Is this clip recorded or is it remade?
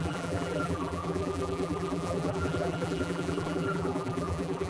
remade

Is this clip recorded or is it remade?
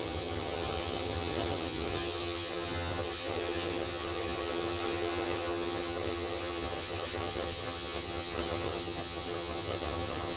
remade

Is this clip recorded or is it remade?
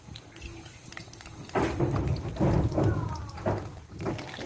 recorded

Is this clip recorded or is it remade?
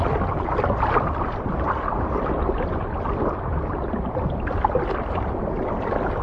recorded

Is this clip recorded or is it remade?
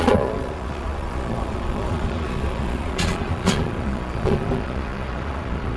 remade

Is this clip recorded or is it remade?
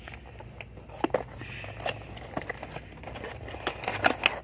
recorded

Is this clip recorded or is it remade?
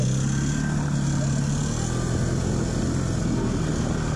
recorded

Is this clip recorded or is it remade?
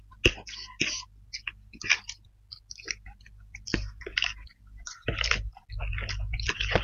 recorded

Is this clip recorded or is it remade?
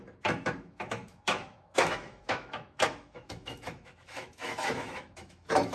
remade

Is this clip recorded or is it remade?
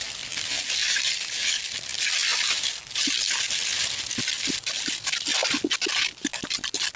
recorded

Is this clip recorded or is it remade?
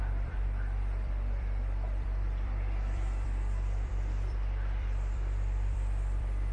remade